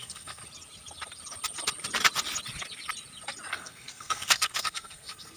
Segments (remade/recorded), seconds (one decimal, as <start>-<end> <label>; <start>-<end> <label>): 0.0-0.4 remade; 0.4-3.5 recorded; 3.5-5.4 remade